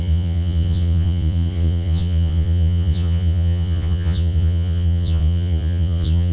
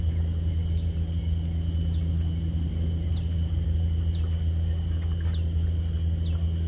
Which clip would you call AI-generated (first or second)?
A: first